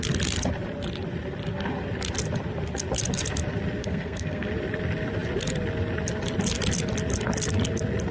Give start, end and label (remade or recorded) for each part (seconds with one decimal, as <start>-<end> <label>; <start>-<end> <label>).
0.0-3.8 recorded; 3.8-4.5 remade; 4.5-8.1 recorded